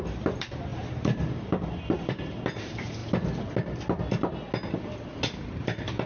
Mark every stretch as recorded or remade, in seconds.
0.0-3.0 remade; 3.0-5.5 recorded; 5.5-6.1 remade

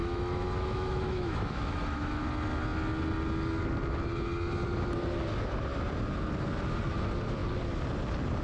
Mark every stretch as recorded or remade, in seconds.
0.0-2.2 remade; 2.2-8.4 recorded

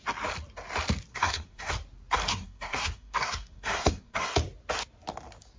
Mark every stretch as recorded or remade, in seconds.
0.0-1.1 recorded; 1.1-1.7 remade; 1.7-2.3 recorded; 2.3-4.3 remade; 4.3-5.6 recorded